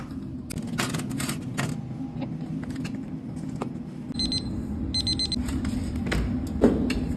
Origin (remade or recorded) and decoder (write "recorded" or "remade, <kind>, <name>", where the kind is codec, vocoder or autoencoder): recorded